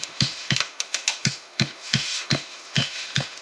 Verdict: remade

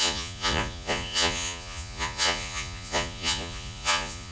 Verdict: remade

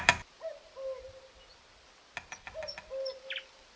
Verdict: recorded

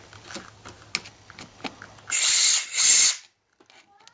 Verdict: recorded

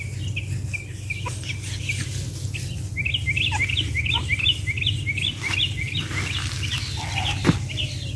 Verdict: recorded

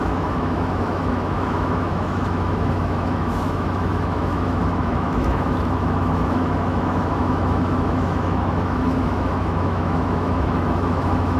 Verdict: remade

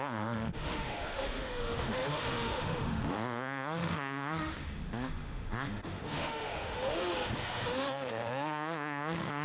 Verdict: remade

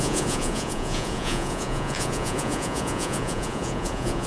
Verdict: remade